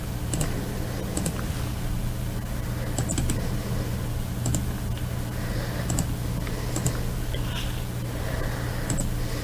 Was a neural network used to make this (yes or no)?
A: no